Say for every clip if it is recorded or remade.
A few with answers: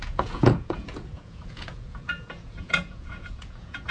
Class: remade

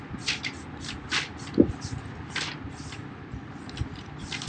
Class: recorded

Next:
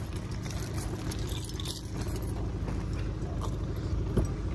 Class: recorded